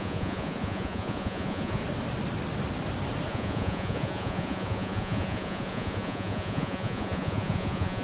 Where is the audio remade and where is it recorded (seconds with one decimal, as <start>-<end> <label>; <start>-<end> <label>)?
0.0-1.8 remade; 1.8-3.3 recorded; 3.3-8.0 remade